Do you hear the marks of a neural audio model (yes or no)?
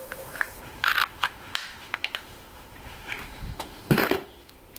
yes